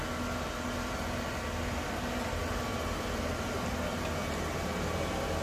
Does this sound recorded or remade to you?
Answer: recorded